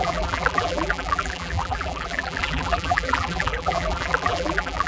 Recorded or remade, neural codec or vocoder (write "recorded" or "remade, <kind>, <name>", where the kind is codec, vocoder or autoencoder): remade, vocoder, BigVGAN v2